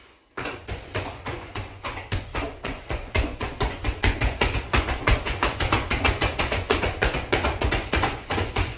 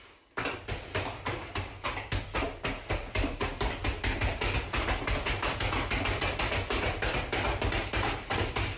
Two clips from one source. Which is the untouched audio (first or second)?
second